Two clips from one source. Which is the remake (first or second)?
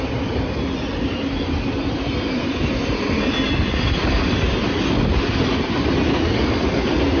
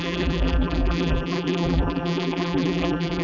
second